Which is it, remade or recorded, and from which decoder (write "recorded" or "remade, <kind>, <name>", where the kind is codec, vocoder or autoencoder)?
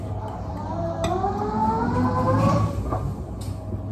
recorded